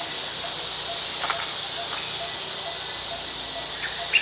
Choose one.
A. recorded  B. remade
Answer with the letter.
A